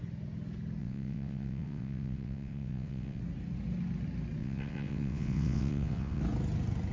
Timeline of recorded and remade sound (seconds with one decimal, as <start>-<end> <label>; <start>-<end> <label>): 0.0-0.8 recorded; 0.8-3.2 remade; 3.2-4.4 recorded; 4.4-6.2 remade; 6.2-6.9 recorded

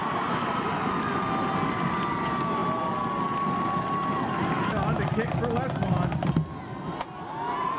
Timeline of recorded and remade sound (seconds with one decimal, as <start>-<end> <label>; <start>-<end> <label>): 0.0-7.8 recorded

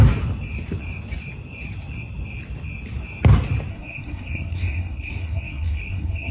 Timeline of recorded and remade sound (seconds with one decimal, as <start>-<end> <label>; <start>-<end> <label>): 0.0-3.7 recorded; 3.7-6.3 remade

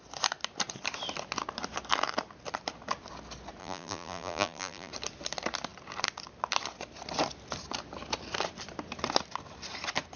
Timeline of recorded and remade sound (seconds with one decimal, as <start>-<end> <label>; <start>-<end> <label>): 0.0-3.6 recorded; 3.6-4.9 remade; 4.9-10.2 recorded

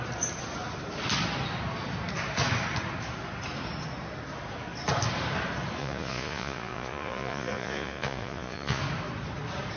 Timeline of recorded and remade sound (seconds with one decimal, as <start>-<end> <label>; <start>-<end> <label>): 0.0-5.8 recorded; 5.8-8.8 remade; 8.8-9.8 recorded

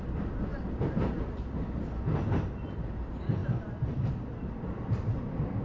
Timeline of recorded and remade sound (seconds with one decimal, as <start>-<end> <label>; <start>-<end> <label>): 0.0-5.6 recorded